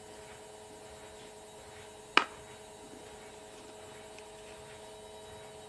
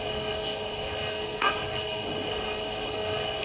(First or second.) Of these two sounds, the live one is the first